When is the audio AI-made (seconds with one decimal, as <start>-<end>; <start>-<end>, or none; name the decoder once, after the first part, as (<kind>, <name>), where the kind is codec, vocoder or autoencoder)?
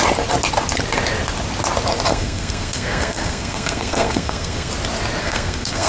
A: 2.1-4.7 (codec, SNAC); 5.2-5.9